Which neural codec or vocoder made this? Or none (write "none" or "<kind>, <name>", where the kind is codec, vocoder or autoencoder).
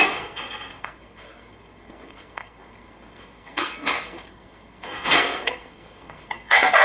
codec, SNAC